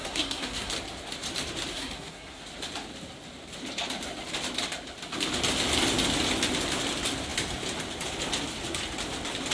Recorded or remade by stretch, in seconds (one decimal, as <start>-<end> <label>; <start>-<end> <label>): 0.0-0.7 remade; 0.7-1.7 recorded; 1.7-2.4 remade; 2.4-9.5 recorded